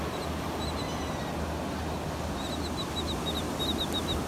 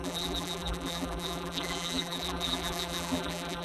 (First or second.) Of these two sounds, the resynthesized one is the second